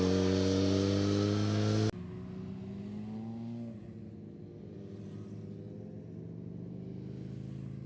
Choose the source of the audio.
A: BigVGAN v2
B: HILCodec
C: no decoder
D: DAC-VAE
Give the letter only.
C